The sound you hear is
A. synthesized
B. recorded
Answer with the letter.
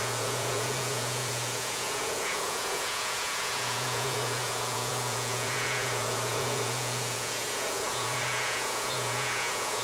A